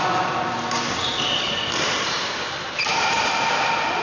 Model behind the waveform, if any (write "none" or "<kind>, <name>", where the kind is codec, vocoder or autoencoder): none